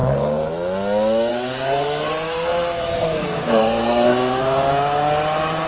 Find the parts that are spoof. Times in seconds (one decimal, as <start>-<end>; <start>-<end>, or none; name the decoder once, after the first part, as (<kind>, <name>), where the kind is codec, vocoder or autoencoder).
0.0-0.5 (codec, SNAC); 1.3-4.7